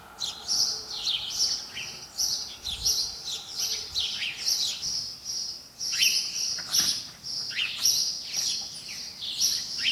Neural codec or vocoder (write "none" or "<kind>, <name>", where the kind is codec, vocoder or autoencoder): none